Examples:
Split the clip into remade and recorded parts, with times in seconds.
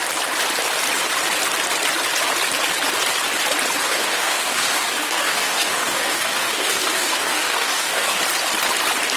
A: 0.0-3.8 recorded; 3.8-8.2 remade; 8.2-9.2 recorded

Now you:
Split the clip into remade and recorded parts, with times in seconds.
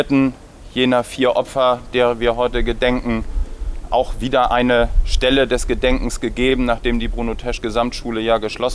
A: 0.0-8.7 recorded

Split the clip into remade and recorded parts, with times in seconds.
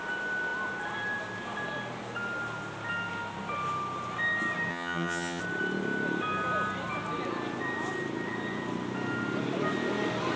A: 0.0-4.7 recorded; 4.7-5.4 remade; 5.4-10.4 recorded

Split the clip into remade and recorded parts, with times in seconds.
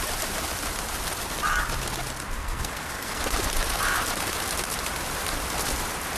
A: 0.0-2.4 recorded; 2.4-3.2 remade; 3.2-6.2 recorded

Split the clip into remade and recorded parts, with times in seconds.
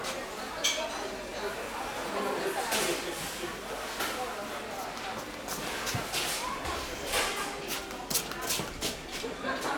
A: 0.0-9.8 recorded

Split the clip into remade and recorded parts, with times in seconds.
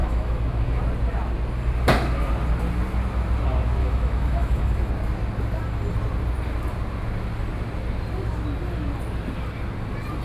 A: 0.0-0.8 remade; 0.8-3.8 recorded; 3.8-4.9 remade; 4.9-10.2 recorded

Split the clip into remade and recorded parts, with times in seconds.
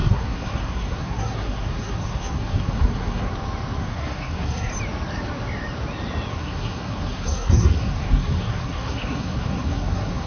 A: 0.0-3.3 remade; 3.3-3.8 recorded; 3.8-4.7 remade; 4.7-6.3 recorded; 6.3-10.3 remade